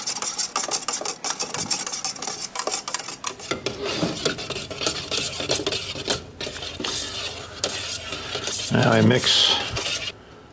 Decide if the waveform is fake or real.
real